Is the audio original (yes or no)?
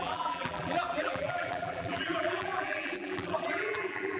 no